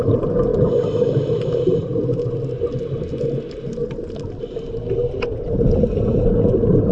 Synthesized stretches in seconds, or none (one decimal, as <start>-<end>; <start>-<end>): none